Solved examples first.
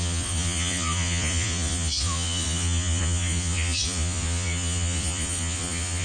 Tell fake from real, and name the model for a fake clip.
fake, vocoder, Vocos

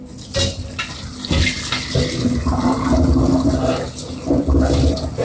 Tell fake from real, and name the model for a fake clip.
real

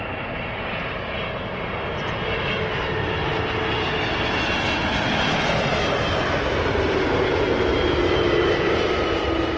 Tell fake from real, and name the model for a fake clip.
real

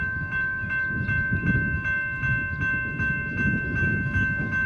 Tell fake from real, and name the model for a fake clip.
real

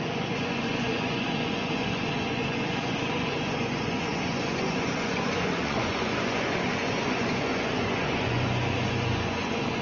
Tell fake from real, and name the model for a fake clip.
fake, vocoder, Vocos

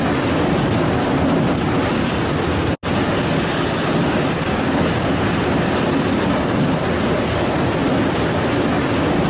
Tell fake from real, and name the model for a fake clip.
real